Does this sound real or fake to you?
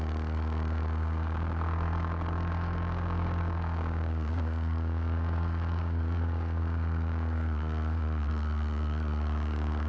fake